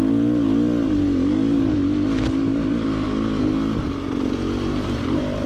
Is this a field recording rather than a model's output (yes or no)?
yes